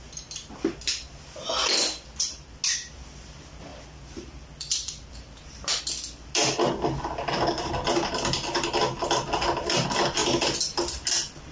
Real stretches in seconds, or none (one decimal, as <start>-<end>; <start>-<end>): 0.0-3.7; 5.8-11.5